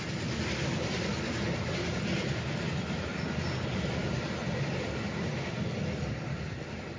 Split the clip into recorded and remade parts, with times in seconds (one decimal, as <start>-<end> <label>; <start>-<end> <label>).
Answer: 0.0-7.0 recorded